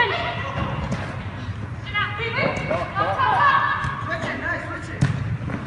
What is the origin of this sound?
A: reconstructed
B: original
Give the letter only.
B